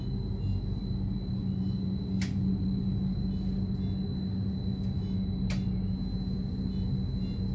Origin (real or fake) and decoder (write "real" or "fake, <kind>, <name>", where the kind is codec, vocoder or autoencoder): real